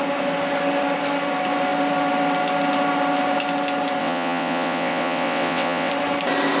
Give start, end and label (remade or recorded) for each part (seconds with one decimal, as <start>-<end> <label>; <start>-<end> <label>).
0.0-4.0 recorded; 4.0-5.9 remade; 5.9-6.6 recorded